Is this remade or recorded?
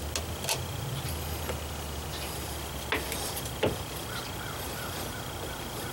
recorded